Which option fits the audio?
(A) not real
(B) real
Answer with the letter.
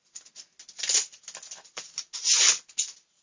B